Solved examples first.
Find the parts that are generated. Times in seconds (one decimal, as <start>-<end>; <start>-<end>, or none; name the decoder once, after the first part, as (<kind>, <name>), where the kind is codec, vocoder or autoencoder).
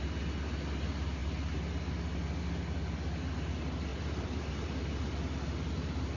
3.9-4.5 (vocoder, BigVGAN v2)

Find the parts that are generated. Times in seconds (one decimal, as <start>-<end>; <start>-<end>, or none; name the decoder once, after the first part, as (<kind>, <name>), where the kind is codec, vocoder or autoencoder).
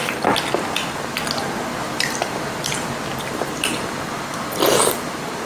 none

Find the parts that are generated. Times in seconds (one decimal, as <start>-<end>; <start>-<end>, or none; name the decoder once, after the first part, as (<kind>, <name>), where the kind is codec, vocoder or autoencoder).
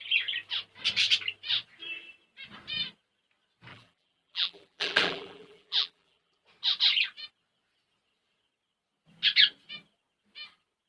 3.7-6.4 (vocoder, BigVGAN v2)